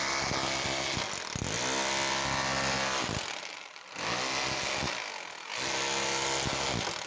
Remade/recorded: recorded